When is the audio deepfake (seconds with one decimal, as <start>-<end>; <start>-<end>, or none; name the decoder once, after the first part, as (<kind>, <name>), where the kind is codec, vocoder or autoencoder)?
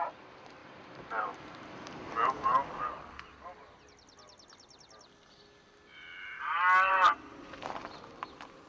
0.6-1.7 (vocoder, BigVGAN v2)